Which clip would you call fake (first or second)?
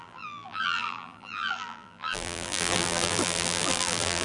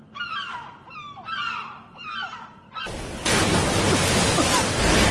first